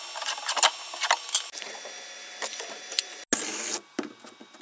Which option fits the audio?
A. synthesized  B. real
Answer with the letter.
B